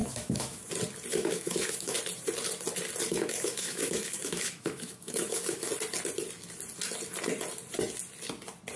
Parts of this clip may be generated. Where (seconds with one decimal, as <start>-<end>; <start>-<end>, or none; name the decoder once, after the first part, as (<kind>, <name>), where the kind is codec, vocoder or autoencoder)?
0.0-0.7 (autoencoder, DAC-VAE); 1.1-2.0; 3.1-5.7